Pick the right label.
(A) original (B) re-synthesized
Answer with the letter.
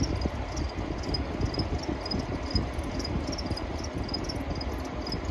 A